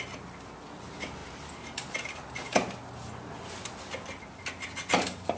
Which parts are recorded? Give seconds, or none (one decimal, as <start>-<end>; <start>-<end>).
0.0-5.4